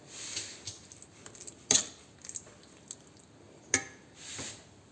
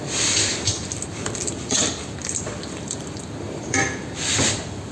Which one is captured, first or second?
first